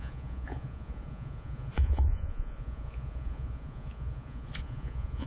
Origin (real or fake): fake